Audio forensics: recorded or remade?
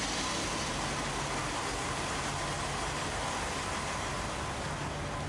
recorded